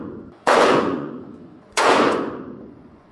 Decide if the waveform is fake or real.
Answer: fake